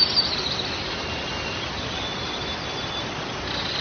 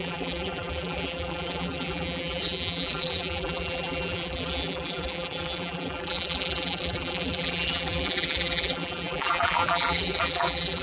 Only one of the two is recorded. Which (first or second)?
first